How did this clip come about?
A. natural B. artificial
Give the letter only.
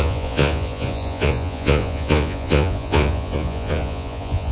B